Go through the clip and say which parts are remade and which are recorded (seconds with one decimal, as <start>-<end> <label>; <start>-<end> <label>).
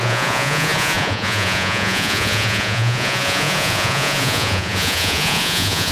0.0-5.9 remade